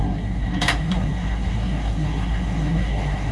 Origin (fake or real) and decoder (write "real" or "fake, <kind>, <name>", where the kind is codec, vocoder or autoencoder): fake, codec, SNAC